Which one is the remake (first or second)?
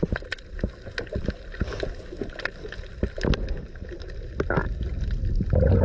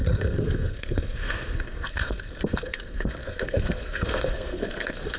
second